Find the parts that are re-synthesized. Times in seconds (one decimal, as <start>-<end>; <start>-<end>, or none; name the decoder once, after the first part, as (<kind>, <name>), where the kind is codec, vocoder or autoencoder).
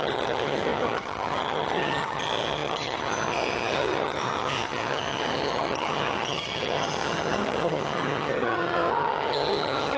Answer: 0.0-10.0 (vocoder, HiFi-GAN)